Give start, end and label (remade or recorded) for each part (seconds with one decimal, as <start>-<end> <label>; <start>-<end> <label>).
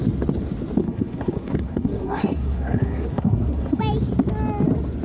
0.0-0.8 recorded; 0.8-3.8 remade; 3.8-5.0 recorded